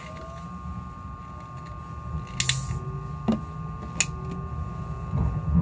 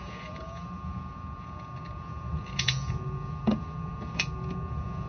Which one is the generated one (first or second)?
second